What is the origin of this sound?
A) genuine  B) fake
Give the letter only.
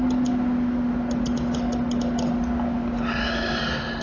A